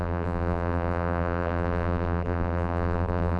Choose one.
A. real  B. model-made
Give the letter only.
B